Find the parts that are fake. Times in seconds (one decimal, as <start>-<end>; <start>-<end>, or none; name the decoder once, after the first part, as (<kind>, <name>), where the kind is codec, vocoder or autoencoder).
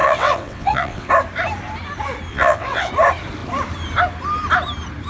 0.0-1.1 (vocoder, WaveNeXt); 2.3-2.9